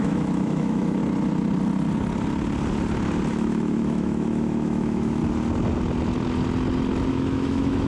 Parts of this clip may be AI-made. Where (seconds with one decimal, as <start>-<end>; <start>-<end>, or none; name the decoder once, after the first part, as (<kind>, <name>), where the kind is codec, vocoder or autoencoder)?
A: 0.0-1.0 (autoencoder, DAC-VAE); 3.3-5.2; 7.1-7.9